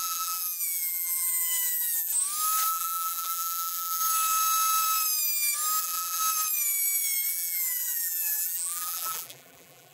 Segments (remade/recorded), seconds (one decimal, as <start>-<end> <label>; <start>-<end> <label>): 0.0-2.1 remade; 2.1-2.7 recorded; 2.7-4.0 remade; 4.0-5.8 recorded; 5.8-6.2 remade; 6.2-7.3 recorded; 7.3-9.9 remade